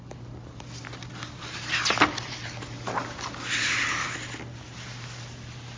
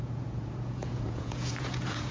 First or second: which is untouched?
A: first